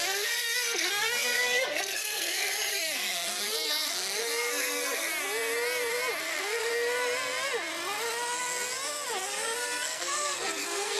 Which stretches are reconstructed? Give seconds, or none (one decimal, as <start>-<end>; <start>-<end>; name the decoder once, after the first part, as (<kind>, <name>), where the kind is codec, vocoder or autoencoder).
0.0-5.1 (codec, SNAC); 6.2-6.7; 9.2-11.0